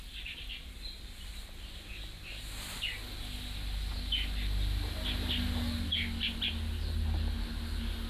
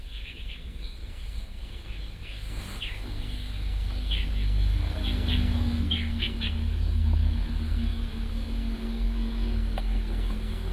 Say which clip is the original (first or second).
first